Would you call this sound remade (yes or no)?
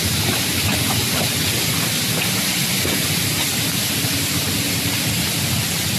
no